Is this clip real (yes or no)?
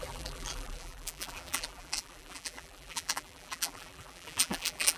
no